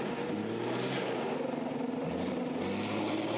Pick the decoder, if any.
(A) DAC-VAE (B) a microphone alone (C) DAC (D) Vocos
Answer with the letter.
B